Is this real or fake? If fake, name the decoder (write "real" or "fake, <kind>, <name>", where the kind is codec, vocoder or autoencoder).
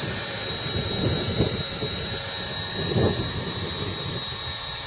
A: real